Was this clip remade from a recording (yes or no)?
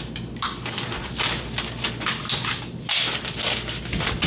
no